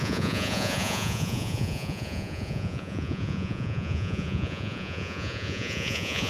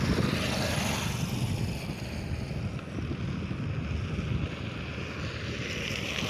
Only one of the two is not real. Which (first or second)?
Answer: first